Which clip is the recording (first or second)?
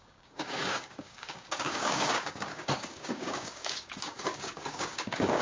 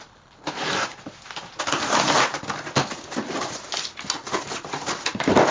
second